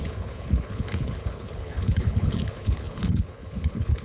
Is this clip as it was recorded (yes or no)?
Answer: no